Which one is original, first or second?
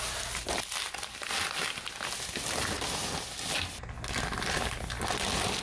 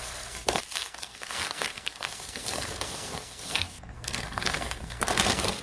first